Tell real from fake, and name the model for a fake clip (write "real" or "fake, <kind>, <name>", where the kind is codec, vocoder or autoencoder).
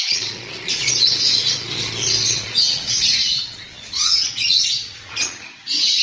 fake, vocoder, Vocos